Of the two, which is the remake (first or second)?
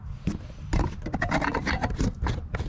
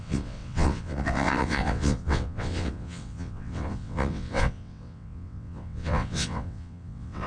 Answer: second